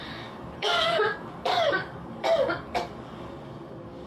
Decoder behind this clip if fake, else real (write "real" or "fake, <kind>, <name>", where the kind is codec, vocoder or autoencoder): fake, codec, DAC